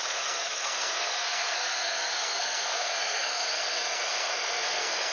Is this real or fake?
fake